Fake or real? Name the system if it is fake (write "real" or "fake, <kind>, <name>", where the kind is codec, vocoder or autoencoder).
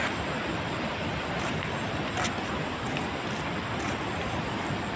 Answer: real